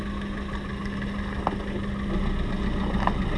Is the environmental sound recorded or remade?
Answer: recorded